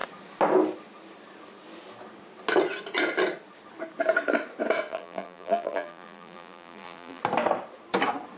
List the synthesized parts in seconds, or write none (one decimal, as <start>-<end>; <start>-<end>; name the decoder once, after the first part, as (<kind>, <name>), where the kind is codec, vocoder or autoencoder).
4.9-7.2 (vocoder, BigVGAN v2)